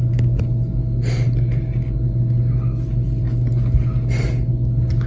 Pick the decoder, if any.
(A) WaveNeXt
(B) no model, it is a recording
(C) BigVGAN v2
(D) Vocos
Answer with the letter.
B